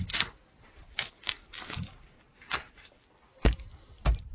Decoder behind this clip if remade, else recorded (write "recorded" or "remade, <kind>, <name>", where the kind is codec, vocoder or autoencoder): recorded